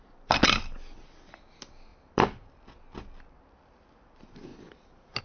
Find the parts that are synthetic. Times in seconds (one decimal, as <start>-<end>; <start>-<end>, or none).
1.9-2.6; 4.5-5.2